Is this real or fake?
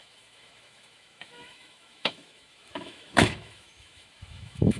fake